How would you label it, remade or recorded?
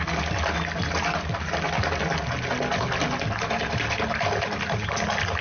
recorded